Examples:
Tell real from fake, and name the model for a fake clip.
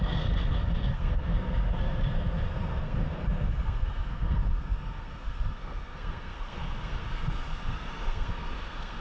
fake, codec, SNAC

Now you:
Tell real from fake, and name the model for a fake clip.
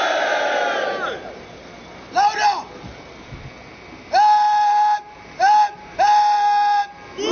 real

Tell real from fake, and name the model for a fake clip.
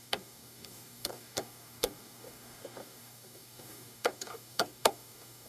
fake, codec, DAC